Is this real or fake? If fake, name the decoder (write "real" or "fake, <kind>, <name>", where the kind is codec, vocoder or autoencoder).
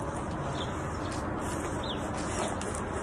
real